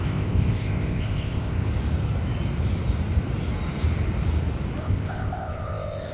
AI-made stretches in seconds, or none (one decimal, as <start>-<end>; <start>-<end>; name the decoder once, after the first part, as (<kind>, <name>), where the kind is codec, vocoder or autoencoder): 0.0-1.7 (codec, ZipCodec); 4.8-6.1

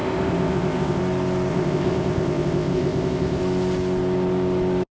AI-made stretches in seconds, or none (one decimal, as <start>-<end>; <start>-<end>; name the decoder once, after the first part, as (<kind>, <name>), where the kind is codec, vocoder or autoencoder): 0.0-1.0 (codec, ZipCodec); 1.5-3.4

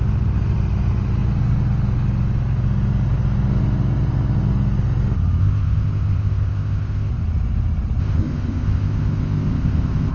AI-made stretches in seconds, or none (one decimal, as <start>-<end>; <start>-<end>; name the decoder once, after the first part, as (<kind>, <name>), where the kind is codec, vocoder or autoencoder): 5.4-7.1 (codec, ZipCodec); 8.0-10.1